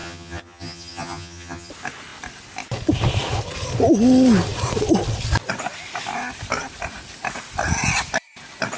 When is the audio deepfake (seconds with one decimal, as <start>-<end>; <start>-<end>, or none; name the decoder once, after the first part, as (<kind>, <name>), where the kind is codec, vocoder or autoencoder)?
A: 0.0-1.7 (vocoder, HiFi-GAN)